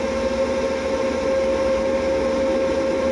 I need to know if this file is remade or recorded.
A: recorded